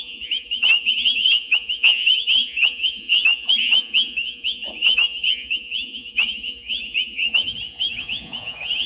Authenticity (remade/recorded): remade